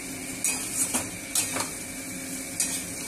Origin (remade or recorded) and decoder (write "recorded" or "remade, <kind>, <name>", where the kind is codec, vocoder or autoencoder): recorded